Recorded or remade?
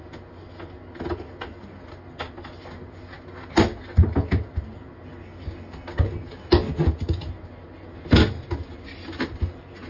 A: recorded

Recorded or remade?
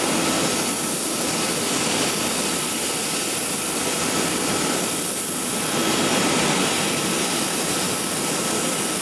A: recorded